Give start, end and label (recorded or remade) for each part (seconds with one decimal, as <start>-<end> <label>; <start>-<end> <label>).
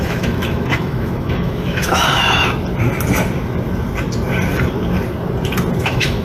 0.0-2.1 remade; 2.1-5.8 recorded; 5.8-6.2 remade